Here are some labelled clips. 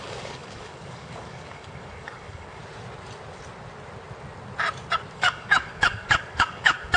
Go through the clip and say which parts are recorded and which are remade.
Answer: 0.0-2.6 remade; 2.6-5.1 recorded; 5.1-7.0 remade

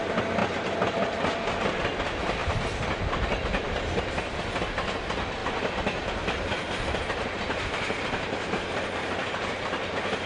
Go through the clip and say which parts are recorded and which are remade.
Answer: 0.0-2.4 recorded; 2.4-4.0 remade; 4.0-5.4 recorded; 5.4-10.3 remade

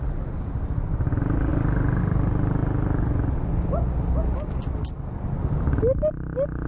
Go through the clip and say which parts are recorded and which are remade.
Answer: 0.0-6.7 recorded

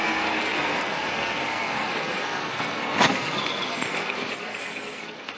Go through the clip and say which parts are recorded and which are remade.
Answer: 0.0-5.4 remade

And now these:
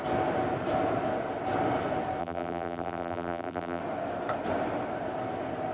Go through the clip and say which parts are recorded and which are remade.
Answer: 0.0-2.2 recorded; 2.2-3.8 remade; 3.8-5.7 recorded

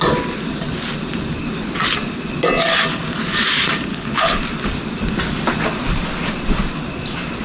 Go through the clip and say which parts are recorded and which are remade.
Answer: 0.0-3.9 recorded; 3.9-4.4 remade; 4.4-7.4 recorded

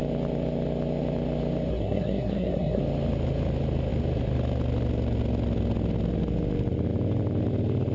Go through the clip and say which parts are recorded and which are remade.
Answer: 0.0-1.7 recorded; 1.7-2.8 remade; 2.8-7.9 recorded

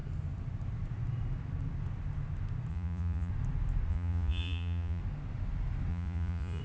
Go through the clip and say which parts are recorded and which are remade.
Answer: 0.0-2.7 recorded; 2.7-3.3 remade; 3.3-3.9 recorded; 3.9-5.0 remade; 5.0-5.9 recorded; 5.9-6.6 remade